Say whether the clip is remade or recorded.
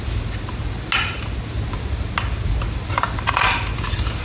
recorded